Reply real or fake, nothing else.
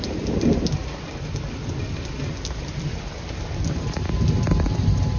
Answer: real